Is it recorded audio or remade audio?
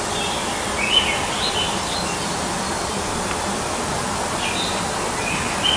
recorded